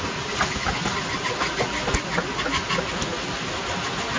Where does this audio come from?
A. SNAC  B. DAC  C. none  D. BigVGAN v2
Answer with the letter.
C